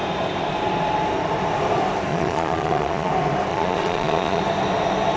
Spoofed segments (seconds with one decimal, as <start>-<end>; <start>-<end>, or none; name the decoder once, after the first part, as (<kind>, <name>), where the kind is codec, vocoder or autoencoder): 2.1-3.1 (vocoder, Vocos); 3.5-4.4